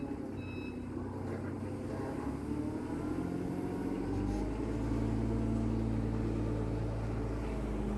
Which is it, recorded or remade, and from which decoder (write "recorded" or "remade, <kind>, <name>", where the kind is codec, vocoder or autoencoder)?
recorded